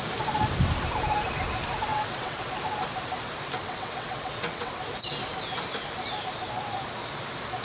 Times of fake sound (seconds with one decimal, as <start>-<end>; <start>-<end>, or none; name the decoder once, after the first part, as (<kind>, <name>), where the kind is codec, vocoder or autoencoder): 1.9-2.5 (vocoder, WaveNeXt); 3.6-4.7